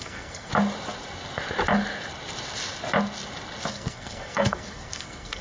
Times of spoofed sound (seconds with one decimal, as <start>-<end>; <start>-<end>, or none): 0.0-0.5; 3.7-5.4